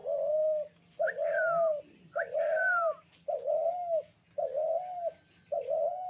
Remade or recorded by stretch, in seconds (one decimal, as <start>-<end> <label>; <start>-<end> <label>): 0.0-6.1 recorded